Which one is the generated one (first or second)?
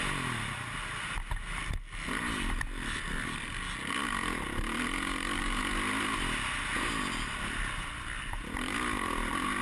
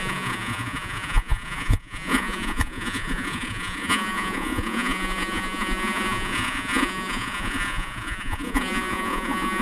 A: second